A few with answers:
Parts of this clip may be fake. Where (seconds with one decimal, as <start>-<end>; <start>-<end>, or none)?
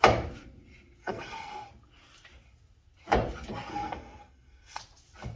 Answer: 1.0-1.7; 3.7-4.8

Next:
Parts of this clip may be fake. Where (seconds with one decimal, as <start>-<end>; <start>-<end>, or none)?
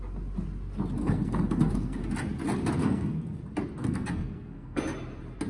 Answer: 1.0-2.0; 2.8-3.4; 3.8-4.8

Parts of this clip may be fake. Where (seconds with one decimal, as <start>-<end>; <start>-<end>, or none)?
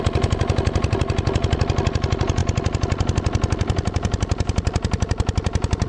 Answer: none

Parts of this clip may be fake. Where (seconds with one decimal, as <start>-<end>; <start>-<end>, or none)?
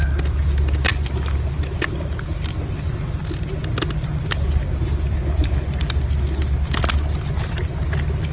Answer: none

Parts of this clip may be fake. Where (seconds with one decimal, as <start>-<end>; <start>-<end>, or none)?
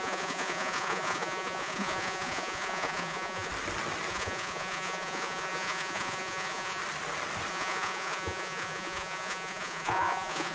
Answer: 0.0-3.5; 4.1-6.8; 7.5-10.5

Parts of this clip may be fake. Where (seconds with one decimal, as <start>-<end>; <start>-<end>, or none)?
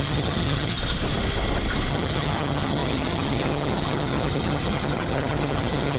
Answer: 0.0-0.8; 1.9-6.0